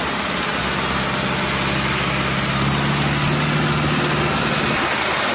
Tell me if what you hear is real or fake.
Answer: real